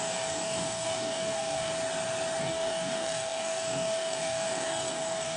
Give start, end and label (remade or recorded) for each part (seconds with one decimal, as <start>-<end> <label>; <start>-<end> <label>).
0.0-1.7 remade; 1.7-2.4 recorded; 2.4-5.4 remade